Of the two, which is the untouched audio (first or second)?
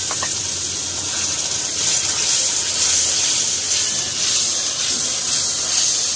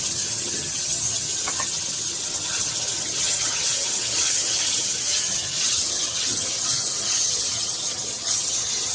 first